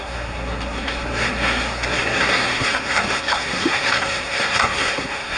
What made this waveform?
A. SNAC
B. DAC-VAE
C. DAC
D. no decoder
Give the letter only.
A